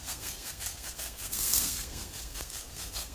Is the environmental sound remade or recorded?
remade